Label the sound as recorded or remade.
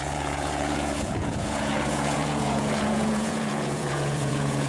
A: remade